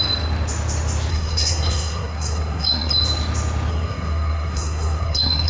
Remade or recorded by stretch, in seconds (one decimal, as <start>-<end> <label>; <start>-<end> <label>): 0.0-1.1 recorded; 1.1-2.9 remade; 2.9-3.7 recorded; 3.7-5.5 remade